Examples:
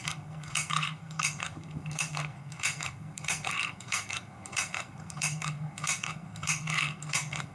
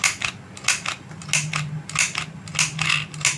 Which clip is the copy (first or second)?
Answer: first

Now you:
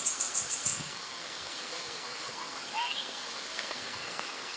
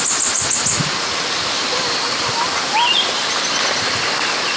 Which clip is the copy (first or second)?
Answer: first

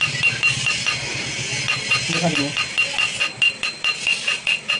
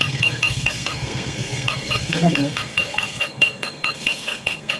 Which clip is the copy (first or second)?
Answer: second